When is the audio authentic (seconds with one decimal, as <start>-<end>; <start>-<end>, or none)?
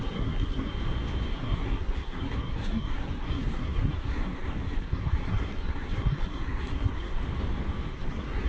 0.7-1.3; 7.2-7.9